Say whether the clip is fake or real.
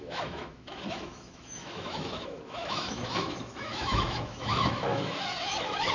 fake